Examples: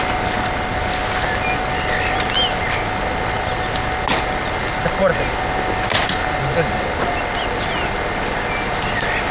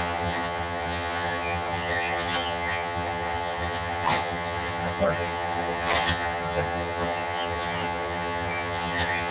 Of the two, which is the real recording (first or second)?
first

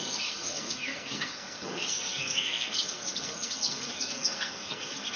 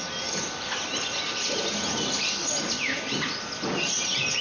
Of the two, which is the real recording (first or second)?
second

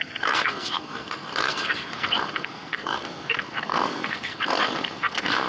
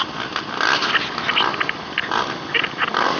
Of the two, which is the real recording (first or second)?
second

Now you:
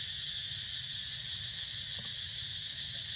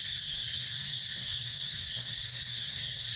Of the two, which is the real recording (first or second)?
first